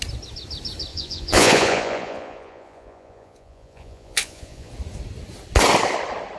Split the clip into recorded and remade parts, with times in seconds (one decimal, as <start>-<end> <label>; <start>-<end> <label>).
0.0-0.9 recorded; 0.9-4.7 remade; 4.7-6.4 recorded